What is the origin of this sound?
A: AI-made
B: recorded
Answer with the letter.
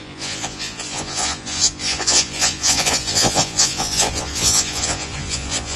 A